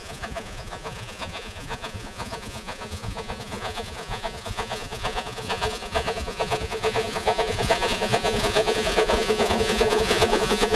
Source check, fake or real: fake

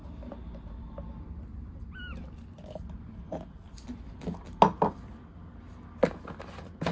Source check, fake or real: real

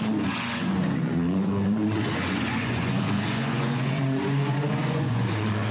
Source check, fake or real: fake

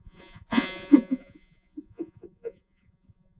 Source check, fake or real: fake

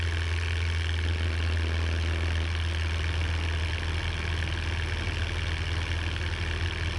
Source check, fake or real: real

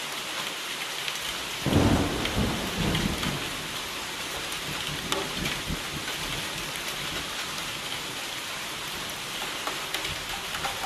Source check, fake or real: real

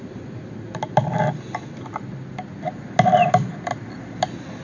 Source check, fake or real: real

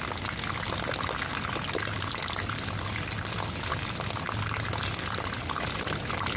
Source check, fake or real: real